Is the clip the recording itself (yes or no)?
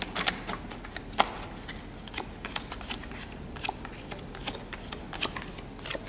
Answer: yes